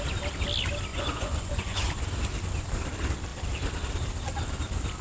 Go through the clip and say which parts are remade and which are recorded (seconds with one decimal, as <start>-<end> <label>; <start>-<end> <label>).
0.0-0.9 recorded; 0.9-2.0 remade; 2.0-5.0 recorded